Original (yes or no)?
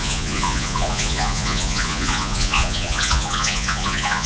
no